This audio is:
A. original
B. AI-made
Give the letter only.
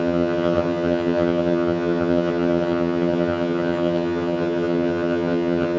B